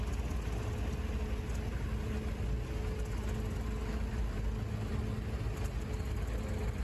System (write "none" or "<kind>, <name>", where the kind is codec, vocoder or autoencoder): none